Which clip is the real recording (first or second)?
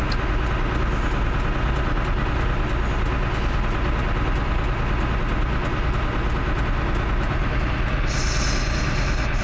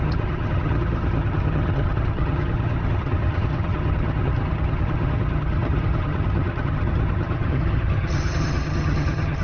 first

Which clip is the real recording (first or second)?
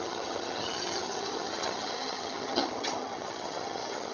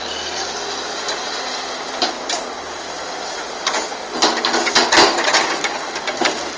second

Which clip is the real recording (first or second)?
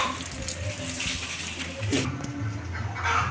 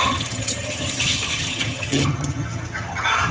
first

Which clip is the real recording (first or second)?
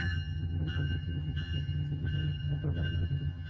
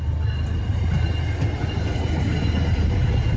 second